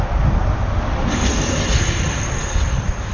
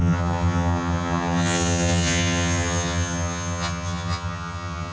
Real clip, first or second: first